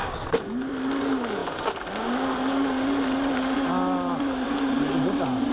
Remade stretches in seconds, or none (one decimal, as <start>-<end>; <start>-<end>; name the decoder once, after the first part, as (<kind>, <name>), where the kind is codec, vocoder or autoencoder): none